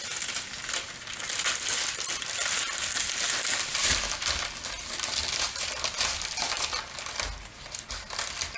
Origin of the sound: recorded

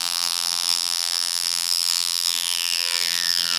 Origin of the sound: remade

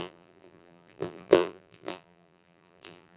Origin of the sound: remade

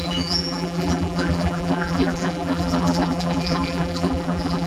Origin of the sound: remade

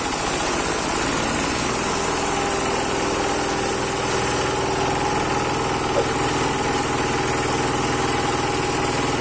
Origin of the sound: recorded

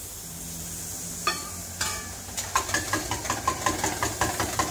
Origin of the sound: recorded